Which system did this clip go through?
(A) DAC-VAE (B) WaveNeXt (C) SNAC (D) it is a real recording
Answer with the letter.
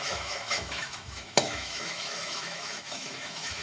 A